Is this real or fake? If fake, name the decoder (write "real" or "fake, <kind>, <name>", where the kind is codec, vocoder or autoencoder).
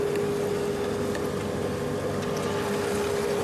real